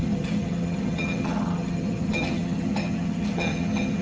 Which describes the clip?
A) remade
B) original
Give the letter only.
A